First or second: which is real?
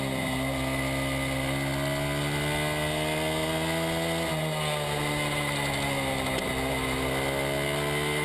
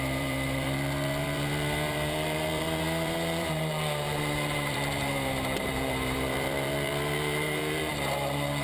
first